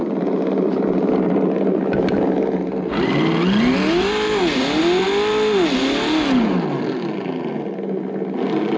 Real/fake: real